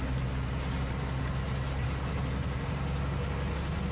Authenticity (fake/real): real